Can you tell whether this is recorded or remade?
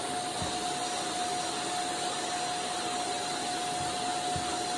recorded